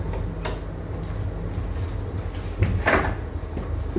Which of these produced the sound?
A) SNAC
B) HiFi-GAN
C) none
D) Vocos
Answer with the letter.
C